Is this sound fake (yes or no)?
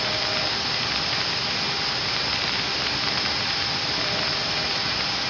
no